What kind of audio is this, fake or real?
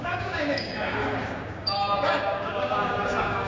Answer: fake